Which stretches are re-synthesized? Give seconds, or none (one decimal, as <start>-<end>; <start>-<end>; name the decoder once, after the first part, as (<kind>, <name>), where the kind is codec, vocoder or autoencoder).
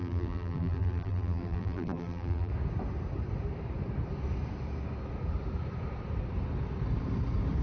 0.0-2.5 (vocoder, BigVGAN v2)